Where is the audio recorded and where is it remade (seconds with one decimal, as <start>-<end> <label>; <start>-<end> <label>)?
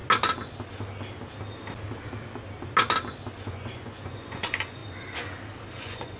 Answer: 0.0-3.5 recorded; 3.5-4.8 remade; 4.8-5.7 recorded; 5.7-6.2 remade